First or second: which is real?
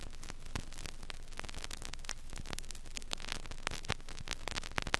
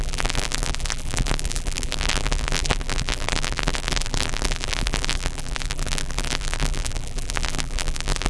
first